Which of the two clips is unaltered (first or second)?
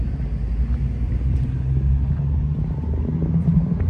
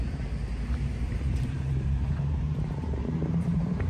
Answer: first